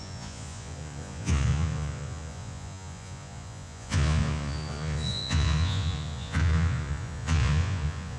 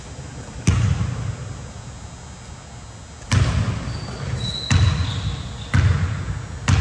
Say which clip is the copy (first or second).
first